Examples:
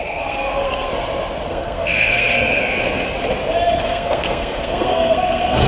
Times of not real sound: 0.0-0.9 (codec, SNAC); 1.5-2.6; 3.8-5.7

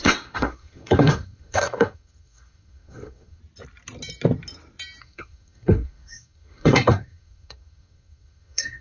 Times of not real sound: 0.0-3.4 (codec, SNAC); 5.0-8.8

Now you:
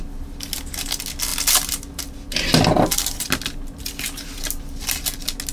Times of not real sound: none